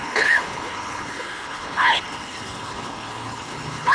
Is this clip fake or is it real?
fake